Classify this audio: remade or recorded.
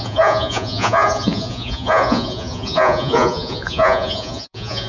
remade